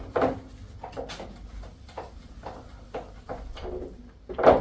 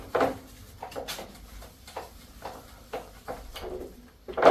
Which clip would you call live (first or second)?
first